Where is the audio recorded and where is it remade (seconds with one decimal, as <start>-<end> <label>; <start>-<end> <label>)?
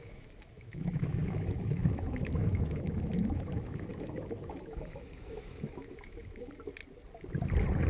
0.0-6.8 remade; 6.8-7.9 recorded